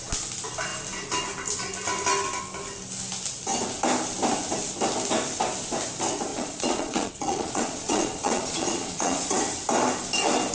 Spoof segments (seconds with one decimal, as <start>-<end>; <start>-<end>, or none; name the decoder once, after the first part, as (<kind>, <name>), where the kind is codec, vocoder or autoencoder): 6.3-9.4 (vocoder, Vocos)